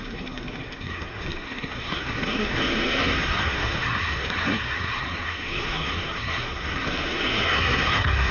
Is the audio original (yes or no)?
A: no